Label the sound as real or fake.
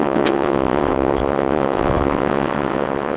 fake